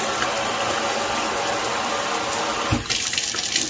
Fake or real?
real